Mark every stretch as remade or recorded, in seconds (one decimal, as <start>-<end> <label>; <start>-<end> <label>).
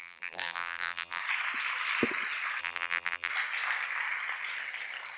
0.0-1.2 remade; 1.2-2.6 recorded; 2.6-3.3 remade; 3.3-5.2 recorded